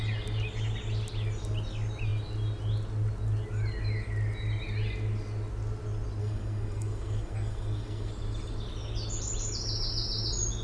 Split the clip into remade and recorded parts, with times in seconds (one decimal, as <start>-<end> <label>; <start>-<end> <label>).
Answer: 0.0-6.2 recorded; 6.2-8.1 remade; 8.1-10.6 recorded